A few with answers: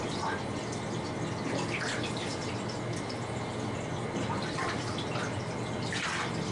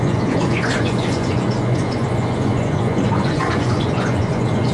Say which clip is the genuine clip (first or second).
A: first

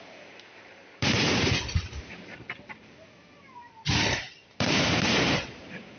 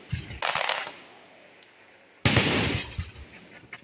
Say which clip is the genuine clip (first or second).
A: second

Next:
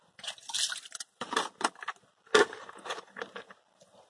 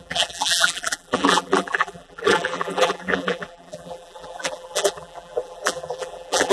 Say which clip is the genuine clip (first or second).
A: first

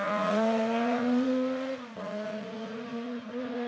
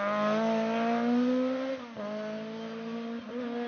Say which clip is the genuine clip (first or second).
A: second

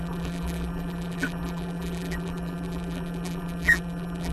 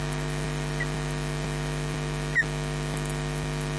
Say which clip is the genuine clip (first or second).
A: second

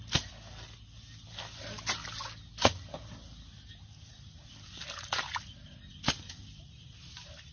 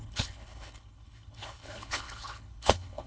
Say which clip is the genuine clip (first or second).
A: first